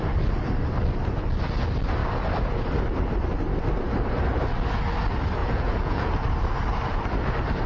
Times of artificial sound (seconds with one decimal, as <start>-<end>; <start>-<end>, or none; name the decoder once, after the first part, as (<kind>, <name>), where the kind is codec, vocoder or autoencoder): 5.4-6.1 (vocoder, Vocos)